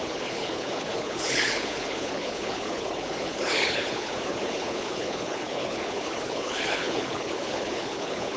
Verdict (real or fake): fake